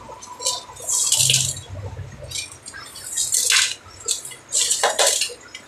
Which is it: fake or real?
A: real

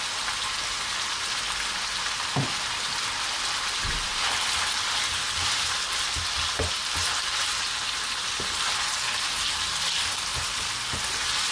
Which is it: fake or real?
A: real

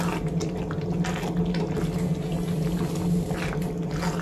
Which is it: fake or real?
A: real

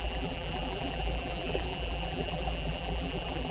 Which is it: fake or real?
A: fake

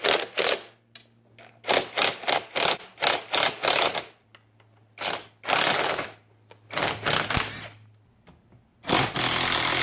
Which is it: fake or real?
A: real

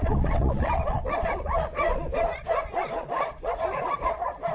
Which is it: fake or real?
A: fake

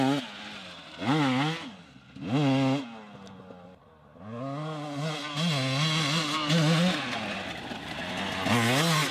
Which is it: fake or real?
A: real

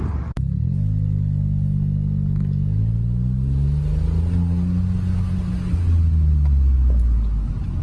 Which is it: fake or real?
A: real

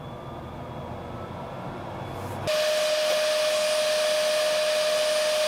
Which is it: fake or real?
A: real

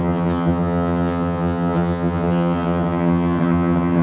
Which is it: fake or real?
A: fake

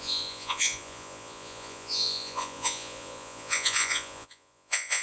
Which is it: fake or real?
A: fake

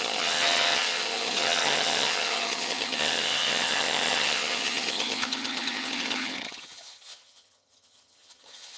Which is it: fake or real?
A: fake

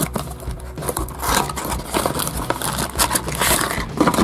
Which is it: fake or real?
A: real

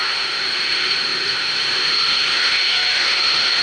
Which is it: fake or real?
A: fake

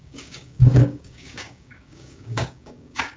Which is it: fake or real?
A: fake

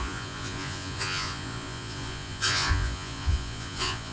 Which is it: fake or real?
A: fake